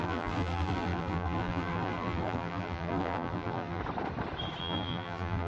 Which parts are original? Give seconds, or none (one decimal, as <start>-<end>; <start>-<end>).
3.8-4.6